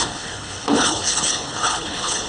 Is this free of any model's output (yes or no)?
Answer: no